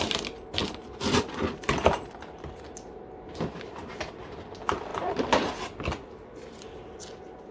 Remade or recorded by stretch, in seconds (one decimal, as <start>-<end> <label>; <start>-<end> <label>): 0.0-4.9 recorded; 4.9-5.5 remade; 5.5-7.5 recorded